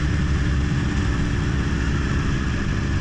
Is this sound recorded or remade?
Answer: recorded